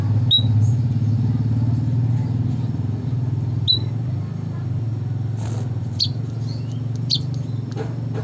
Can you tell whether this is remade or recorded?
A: recorded